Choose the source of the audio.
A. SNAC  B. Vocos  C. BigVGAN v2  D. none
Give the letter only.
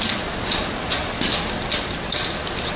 D